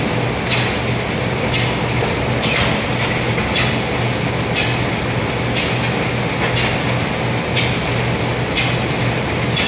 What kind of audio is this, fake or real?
real